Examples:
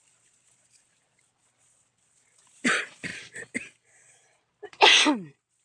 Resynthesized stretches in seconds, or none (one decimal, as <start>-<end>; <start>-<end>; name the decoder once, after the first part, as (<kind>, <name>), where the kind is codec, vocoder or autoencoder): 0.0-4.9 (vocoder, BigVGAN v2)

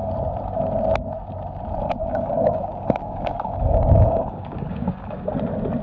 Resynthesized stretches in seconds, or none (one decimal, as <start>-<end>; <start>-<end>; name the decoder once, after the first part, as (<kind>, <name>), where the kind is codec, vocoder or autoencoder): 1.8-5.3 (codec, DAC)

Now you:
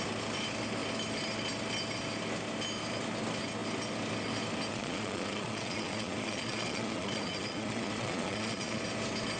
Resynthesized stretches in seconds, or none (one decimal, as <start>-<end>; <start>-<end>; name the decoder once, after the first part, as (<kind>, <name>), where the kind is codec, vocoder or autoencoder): 4.7-8.8 (vocoder, Vocos)